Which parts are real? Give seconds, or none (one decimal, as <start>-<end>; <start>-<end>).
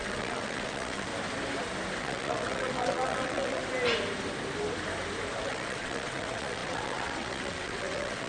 1.1-2.0; 3.6-5.4